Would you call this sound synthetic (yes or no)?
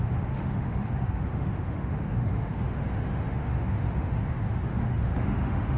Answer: yes